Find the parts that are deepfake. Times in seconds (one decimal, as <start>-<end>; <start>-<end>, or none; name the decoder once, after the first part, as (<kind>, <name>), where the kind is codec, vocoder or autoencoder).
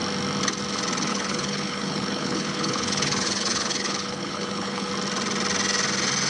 1.1-4.9 (codec, HILCodec)